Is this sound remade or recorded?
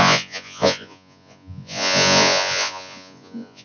remade